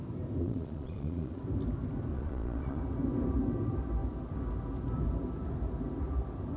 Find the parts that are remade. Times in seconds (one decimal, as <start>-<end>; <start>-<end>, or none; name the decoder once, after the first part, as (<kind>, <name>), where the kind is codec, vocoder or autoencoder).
0.4-1.4 (vocoder, Vocos); 2.1-2.8